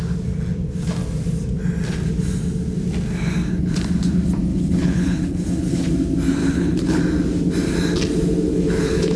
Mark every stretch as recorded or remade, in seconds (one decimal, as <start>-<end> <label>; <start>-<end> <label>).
0.0-4.5 recorded; 4.5-5.9 remade; 5.9-6.4 recorded; 6.4-7.0 remade; 7.0-8.5 recorded; 8.5-9.2 remade

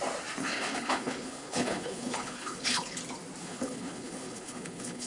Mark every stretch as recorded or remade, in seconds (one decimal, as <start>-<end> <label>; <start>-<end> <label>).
0.0-0.4 recorded; 0.4-3.0 remade; 3.0-3.4 recorded; 3.4-5.1 remade